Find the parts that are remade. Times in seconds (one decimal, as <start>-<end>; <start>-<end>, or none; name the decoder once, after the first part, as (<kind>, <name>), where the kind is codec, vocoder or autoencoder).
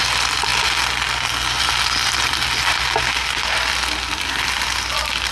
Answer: none